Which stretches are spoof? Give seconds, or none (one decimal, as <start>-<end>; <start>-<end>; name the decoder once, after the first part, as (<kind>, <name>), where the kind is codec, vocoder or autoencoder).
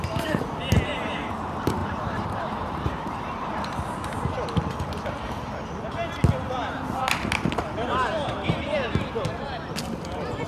1.8-3.9 (vocoder, BigVGAN v2)